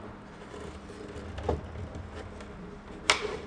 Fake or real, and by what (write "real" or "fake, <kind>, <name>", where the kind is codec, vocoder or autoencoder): real